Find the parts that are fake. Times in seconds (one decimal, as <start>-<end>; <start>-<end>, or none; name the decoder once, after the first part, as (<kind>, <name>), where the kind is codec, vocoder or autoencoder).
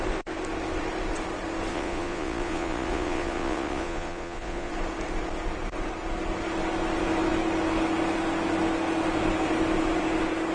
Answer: 1.7-4.7 (vocoder, Vocos)